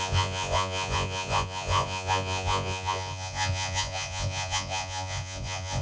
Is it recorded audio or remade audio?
remade